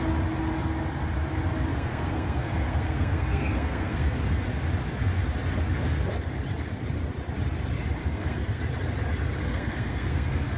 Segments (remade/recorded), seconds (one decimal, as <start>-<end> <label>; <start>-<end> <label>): 0.0-1.7 recorded; 1.7-4.2 remade; 4.2-8.0 recorded; 8.0-8.6 remade; 8.6-9.4 recorded; 9.4-10.6 remade